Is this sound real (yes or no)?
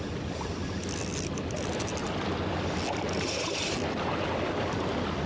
yes